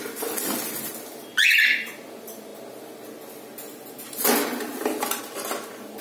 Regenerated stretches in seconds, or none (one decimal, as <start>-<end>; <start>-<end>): none